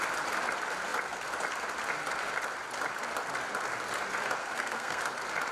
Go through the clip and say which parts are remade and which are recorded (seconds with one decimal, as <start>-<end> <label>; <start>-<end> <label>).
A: 0.0-4.4 recorded; 4.4-5.0 remade; 5.0-5.5 recorded